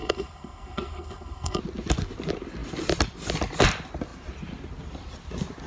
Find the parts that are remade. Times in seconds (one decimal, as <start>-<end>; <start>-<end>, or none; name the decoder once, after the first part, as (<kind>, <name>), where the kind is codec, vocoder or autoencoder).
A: 0.0-1.6 (codec, SNAC)